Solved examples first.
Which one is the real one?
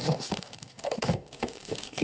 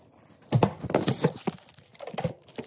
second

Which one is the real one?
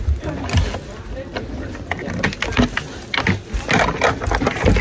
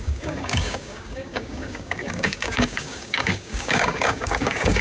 first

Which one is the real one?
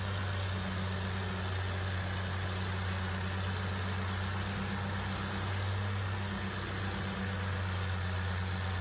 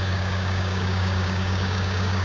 first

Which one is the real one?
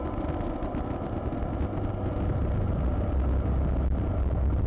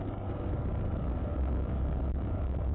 first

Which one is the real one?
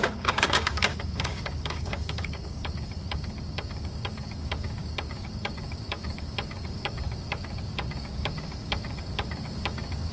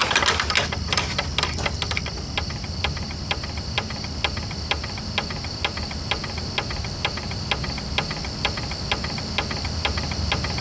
second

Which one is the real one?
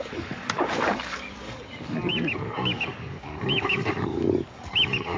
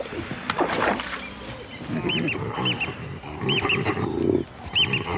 second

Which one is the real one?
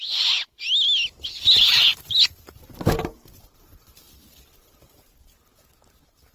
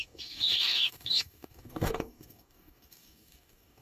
first